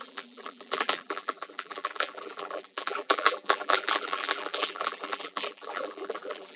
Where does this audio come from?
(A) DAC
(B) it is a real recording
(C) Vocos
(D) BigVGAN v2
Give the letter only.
D